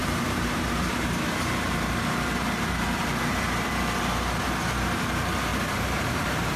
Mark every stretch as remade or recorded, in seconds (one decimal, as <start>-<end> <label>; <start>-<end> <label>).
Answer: 0.0-3.7 remade; 3.7-5.5 recorded; 5.5-6.6 remade